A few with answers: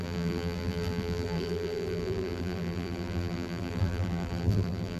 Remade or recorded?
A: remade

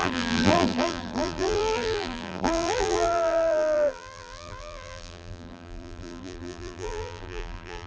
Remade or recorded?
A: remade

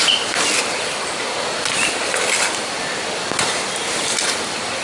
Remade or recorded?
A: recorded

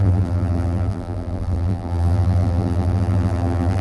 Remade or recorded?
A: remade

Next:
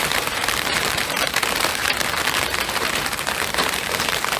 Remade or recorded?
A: remade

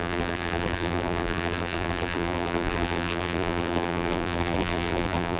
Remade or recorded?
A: remade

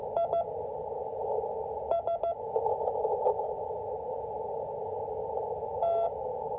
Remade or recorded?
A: recorded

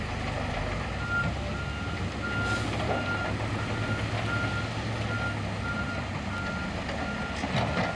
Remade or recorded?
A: recorded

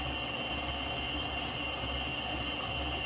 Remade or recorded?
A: recorded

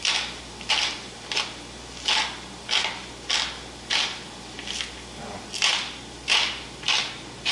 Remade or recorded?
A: recorded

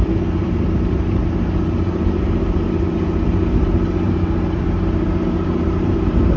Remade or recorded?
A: remade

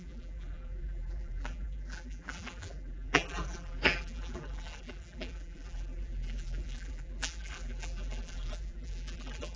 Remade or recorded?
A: remade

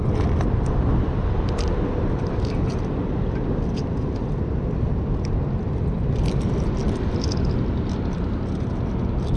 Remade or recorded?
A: recorded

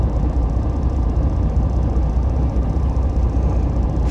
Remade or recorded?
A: remade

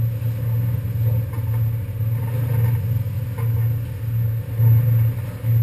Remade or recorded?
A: recorded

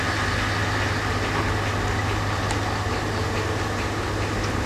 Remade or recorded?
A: recorded